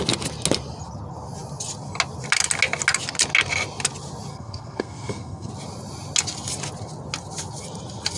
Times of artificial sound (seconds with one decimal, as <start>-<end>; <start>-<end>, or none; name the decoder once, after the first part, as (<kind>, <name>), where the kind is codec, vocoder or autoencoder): 4.3-5.5 (codec, SNAC)